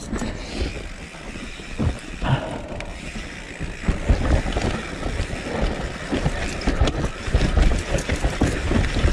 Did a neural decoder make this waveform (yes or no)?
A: yes